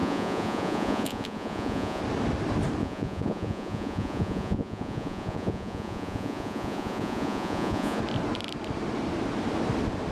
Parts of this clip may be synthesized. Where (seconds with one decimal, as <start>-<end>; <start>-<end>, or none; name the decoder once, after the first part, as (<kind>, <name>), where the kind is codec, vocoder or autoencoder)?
0.0-2.0 (vocoder, Vocos); 2.8-8.0